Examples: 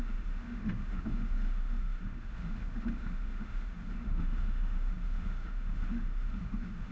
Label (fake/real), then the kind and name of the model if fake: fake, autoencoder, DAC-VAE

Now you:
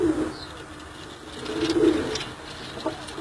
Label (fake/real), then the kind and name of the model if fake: real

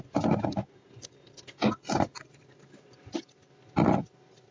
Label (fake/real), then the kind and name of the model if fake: real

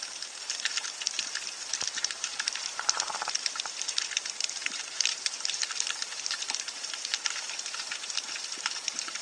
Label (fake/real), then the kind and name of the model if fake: fake, vocoder, BigVGAN v2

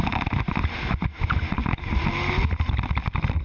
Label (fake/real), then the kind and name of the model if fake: real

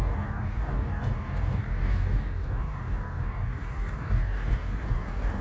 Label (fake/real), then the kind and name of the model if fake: fake, codec, DAC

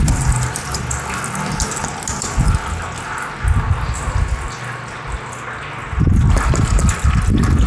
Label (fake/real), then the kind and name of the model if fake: real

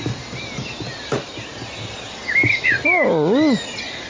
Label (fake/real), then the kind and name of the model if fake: real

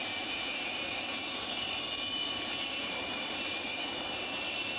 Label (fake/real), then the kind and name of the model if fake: fake, vocoder, BigVGAN v2